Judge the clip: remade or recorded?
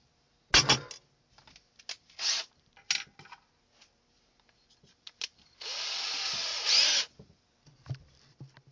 recorded